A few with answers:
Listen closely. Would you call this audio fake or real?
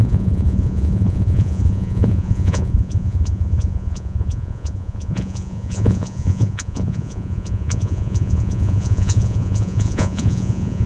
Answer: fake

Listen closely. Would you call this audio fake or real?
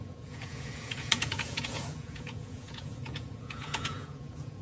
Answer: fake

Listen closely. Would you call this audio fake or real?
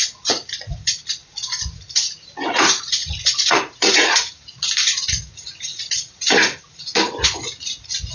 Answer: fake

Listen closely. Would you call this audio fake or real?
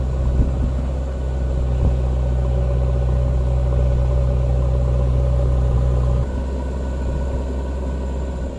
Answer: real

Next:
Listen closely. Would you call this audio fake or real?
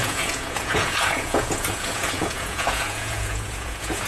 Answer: fake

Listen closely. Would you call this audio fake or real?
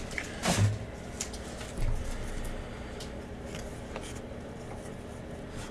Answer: real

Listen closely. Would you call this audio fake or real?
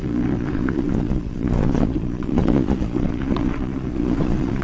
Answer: fake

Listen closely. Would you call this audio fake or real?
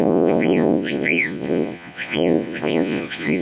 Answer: fake